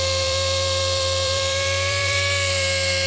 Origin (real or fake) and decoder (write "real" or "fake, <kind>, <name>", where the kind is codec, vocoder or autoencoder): fake, vocoder, BigVGAN v2